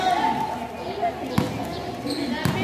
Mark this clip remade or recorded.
recorded